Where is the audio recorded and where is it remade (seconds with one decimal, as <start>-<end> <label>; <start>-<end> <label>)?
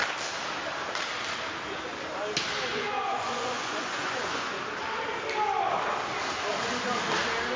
0.0-2.7 recorded; 2.7-4.6 remade; 4.6-7.6 recorded